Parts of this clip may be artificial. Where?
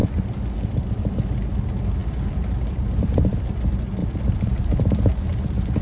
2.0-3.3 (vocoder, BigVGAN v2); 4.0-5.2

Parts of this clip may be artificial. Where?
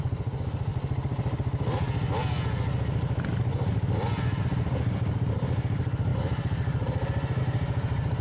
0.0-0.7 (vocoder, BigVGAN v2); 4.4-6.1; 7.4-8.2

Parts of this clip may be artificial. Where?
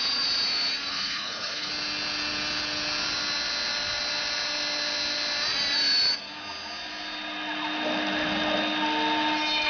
0.9-1.7 (codec, HILCodec)